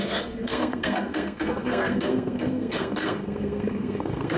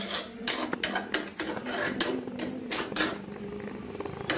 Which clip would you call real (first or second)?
second